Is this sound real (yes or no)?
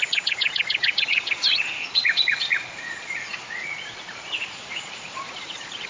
no